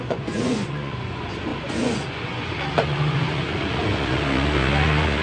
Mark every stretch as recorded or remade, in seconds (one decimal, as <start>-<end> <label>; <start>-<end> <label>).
0.0-5.2 remade